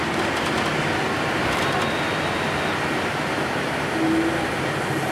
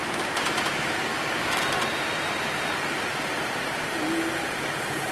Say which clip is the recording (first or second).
first